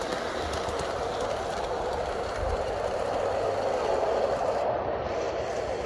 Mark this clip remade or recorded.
recorded